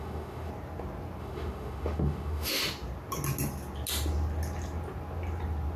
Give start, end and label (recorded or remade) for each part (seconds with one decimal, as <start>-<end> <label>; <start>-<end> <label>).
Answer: 0.0-0.5 remade; 0.5-1.2 recorded; 1.2-2.6 remade; 2.6-5.8 recorded

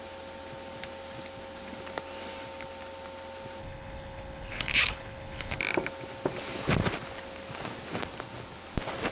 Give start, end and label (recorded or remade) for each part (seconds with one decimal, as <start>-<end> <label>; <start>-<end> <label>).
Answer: 0.0-3.6 recorded; 3.6-5.6 remade; 5.6-9.1 recorded

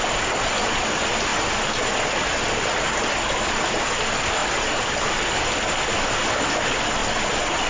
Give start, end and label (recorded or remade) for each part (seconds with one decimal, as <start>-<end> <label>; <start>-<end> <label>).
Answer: 0.0-7.7 recorded

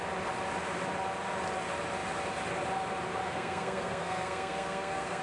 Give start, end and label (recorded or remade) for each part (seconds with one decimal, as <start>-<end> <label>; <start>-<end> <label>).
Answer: 0.0-3.2 recorded; 3.2-5.2 remade